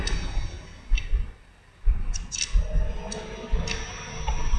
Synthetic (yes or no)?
no